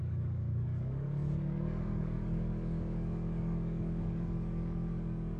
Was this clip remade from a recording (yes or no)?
yes